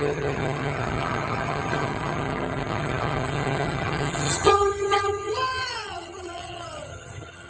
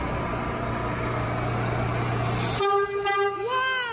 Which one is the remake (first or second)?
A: first